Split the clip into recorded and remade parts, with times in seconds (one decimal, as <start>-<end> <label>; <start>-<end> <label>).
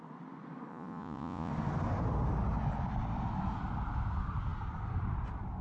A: 0.0-0.7 recorded; 0.7-1.5 remade; 1.5-5.6 recorded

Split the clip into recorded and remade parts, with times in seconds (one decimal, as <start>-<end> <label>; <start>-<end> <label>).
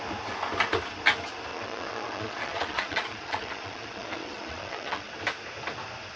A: 0.0-1.5 recorded; 1.5-5.1 remade; 5.1-6.2 recorded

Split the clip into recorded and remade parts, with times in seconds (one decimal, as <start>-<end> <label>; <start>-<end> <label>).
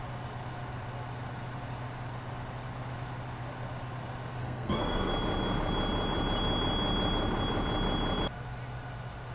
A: 0.0-4.4 recorded; 4.4-5.1 remade; 5.1-9.3 recorded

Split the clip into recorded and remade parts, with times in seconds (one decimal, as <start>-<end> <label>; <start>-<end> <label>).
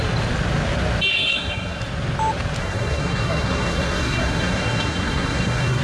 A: 0.0-1.1 recorded; 1.1-1.8 remade; 1.8-2.6 recorded; 2.6-5.8 remade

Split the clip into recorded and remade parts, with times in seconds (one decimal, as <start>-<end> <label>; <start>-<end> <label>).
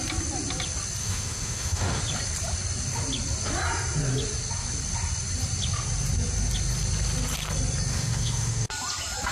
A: 0.0-1.0 recorded; 1.0-2.0 remade; 2.0-7.9 recorded; 7.9-8.7 remade; 8.7-9.3 recorded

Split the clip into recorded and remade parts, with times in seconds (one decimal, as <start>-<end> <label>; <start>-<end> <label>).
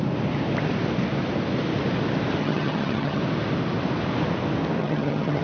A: 0.0-2.4 recorded; 2.4-3.2 remade; 3.2-4.8 recorded; 4.8-5.4 remade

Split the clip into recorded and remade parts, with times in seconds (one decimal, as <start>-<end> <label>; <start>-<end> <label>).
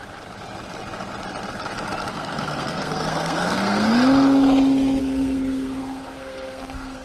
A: 0.0-2.1 recorded; 2.1-3.9 remade; 3.9-5.0 recorded; 5.0-7.0 remade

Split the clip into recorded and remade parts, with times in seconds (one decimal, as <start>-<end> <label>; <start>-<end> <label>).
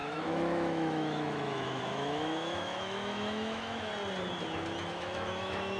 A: 0.0-3.9 remade; 3.9-4.9 recorded; 4.9-5.8 remade